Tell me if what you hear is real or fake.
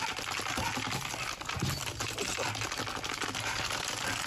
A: real